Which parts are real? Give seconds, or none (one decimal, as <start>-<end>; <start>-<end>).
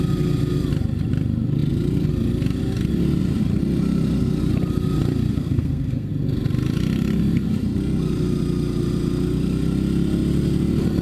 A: 0.0-5.3; 6.1-11.0